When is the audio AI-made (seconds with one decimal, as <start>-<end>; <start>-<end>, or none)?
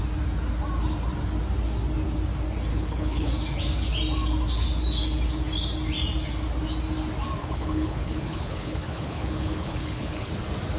2.7-3.3; 7.4-10.3